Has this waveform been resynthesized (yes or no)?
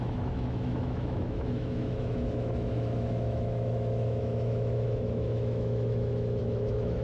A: yes